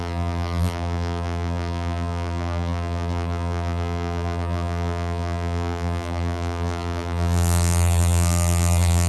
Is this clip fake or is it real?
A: fake